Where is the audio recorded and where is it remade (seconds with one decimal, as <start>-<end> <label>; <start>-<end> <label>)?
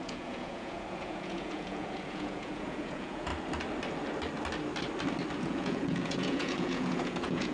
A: 0.0-3.3 remade; 3.3-5.4 recorded; 5.4-7.5 remade